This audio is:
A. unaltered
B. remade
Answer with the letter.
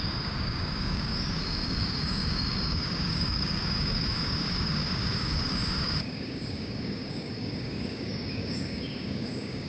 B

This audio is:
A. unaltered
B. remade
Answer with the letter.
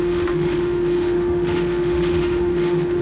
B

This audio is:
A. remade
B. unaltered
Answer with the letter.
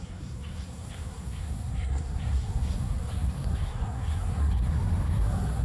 A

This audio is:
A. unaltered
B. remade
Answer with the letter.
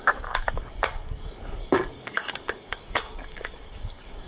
B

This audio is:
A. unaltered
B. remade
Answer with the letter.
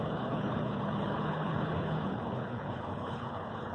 B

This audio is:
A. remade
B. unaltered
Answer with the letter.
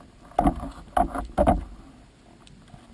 B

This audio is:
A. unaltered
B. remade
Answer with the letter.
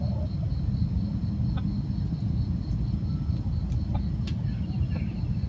A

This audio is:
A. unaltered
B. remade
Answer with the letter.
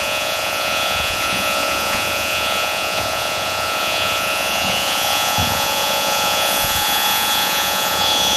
B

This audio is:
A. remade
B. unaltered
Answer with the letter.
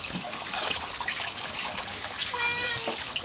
A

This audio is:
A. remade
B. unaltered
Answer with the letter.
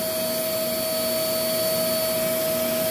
B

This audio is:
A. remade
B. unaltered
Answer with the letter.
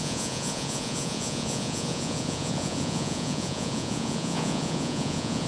A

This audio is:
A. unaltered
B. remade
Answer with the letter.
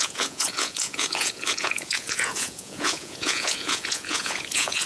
B